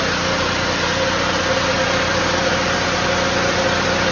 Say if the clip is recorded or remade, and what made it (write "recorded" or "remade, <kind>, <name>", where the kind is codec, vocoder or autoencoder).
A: recorded